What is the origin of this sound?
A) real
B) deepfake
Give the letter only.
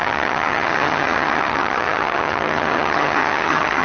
B